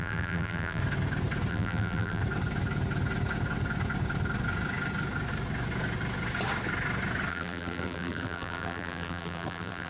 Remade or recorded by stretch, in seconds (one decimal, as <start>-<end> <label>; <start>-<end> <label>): 0.0-0.8 remade; 0.8-1.5 recorded; 1.5-2.2 remade; 2.2-7.3 recorded; 7.3-9.9 remade